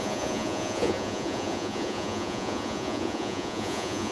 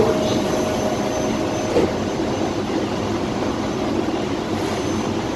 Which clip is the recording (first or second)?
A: second